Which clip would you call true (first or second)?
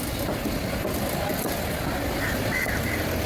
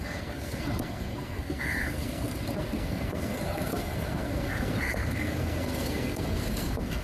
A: first